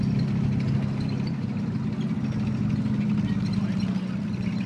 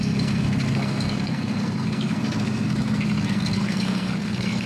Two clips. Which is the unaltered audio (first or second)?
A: first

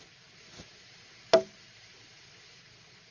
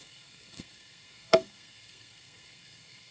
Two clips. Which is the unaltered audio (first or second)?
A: first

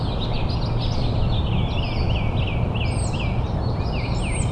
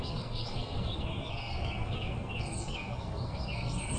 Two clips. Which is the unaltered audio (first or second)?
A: first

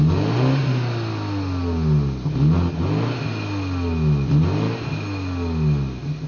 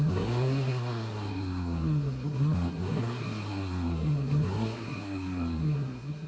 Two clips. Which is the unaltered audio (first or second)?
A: first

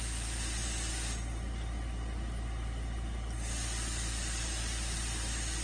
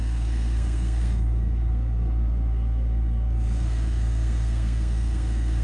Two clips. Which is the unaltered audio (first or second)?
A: first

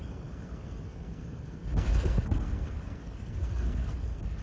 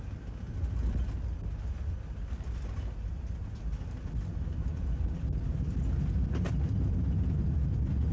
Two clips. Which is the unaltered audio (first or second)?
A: second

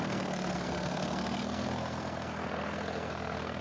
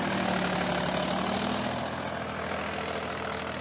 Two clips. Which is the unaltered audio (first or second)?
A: second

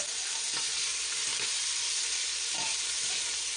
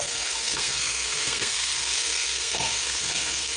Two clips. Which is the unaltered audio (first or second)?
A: first